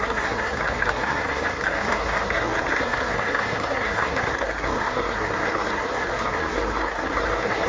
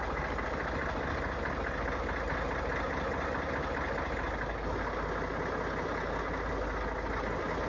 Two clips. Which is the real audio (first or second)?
second